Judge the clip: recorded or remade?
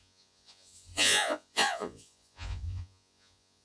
remade